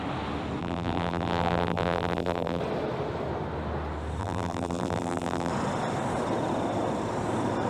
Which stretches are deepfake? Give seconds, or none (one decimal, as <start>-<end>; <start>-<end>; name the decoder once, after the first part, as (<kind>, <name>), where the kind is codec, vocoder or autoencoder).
0.6-2.6 (vocoder, BigVGAN v2); 4.2-5.5